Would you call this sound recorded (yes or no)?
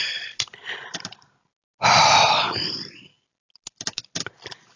yes